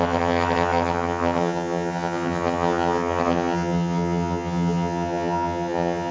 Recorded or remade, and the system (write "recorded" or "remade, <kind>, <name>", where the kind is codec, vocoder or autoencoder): remade, vocoder, HiFi-GAN